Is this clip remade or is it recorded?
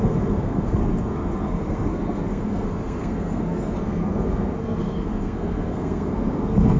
remade